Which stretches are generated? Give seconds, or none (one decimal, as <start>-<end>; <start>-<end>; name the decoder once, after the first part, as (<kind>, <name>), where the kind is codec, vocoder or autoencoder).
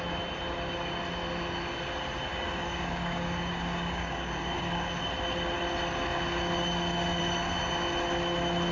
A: 2.3-5.0 (codec, DAC)